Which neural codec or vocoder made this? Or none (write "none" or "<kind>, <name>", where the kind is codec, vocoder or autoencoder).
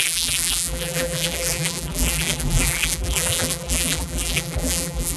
vocoder, BigVGAN v2